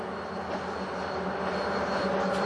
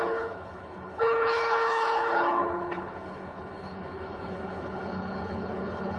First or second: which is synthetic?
second